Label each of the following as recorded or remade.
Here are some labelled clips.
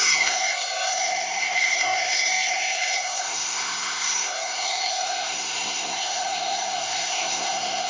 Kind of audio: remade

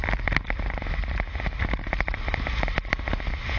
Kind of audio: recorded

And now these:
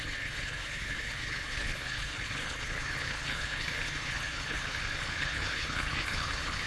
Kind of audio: remade